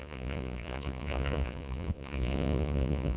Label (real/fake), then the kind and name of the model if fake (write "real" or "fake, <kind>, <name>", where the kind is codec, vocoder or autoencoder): fake, vocoder, Vocos